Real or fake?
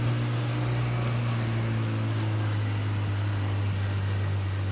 real